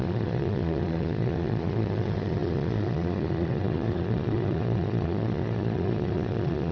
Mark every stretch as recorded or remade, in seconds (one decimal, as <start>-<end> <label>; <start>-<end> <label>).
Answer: 0.0-6.7 remade